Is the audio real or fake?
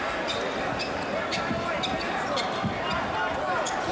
real